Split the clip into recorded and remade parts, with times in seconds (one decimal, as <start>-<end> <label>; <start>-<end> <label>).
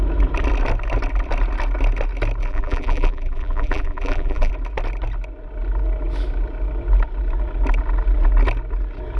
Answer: 0.0-2.4 recorded; 2.4-4.5 remade; 4.5-9.2 recorded